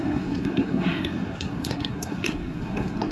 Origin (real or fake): fake